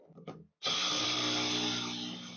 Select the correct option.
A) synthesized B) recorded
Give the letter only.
B